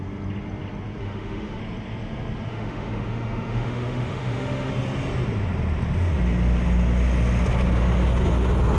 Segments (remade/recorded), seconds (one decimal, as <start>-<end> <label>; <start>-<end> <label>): 0.0-1.0 recorded; 1.0-1.6 remade; 1.6-2.5 recorded; 2.5-4.7 remade; 4.7-8.8 recorded